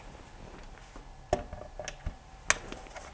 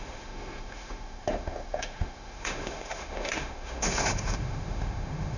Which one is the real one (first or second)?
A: first